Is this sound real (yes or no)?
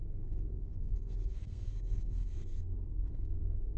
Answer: no